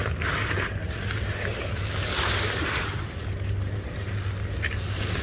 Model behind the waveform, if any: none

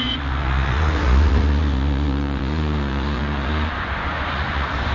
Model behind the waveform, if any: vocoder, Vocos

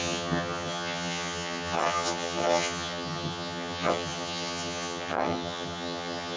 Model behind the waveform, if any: vocoder, HiFi-GAN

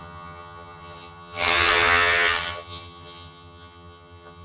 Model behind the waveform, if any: vocoder, HiFi-GAN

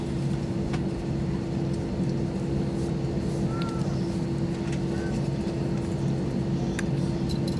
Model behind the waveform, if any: none